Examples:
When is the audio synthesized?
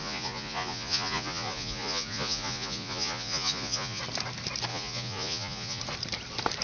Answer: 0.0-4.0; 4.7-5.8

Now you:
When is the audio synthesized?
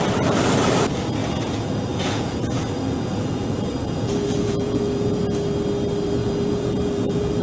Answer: 1.2-5.2; 6.2-7.4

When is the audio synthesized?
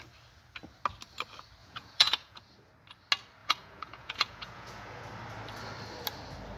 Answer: 1.6-2.4; 3.4-5.0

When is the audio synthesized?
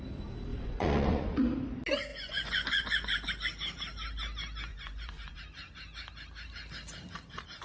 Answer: 0.5-1.4; 2.1-3.3; 4.7-5.4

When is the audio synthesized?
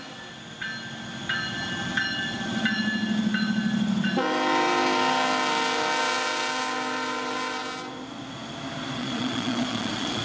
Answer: 9.0-10.2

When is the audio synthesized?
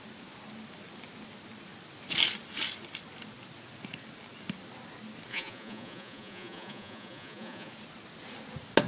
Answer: 5.3-7.7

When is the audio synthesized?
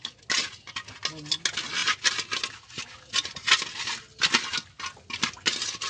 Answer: none